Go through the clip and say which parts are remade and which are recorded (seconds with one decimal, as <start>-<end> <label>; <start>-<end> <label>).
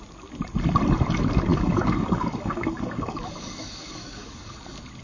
0.0-1.5 recorded; 1.5-4.5 remade; 4.5-5.0 recorded